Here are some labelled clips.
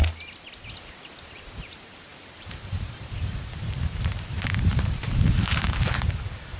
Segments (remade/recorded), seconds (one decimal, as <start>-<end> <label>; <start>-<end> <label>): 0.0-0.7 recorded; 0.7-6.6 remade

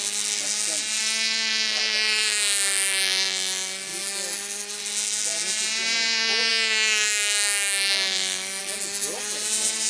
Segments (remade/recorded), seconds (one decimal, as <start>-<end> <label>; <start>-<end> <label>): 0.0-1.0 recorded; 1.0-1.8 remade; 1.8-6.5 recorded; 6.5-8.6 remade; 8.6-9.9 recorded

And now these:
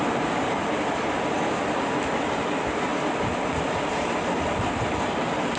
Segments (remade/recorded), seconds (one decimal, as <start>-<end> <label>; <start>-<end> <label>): 0.0-5.6 recorded

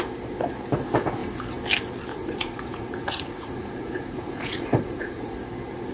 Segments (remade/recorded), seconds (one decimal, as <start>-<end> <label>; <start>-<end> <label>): 0.0-2.1 recorded; 2.1-5.3 remade; 5.3-5.9 recorded

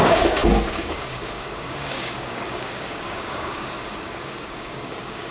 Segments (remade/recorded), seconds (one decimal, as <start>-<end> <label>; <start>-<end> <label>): 0.0-5.3 remade